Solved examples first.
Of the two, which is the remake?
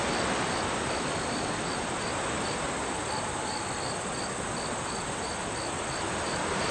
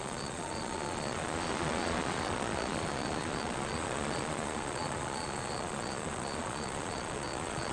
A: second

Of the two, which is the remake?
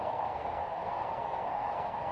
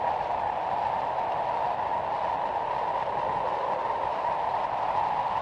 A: first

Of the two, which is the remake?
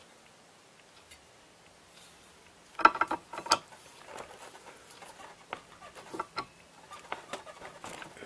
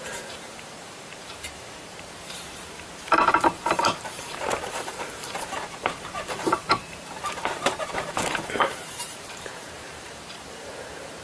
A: second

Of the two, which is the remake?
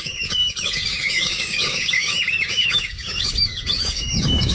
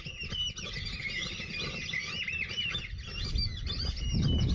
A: first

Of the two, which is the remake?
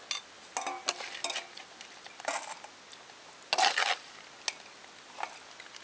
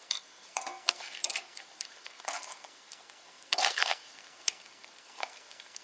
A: second